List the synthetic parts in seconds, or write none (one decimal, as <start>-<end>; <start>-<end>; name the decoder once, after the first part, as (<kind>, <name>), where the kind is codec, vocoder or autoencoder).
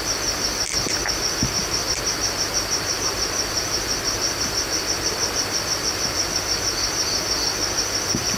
1.6-6.4 (vocoder, BigVGAN v2)